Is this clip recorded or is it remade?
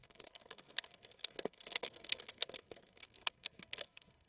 remade